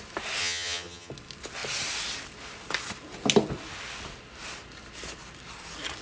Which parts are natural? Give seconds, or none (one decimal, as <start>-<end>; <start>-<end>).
0.0-0.4; 1.1-6.0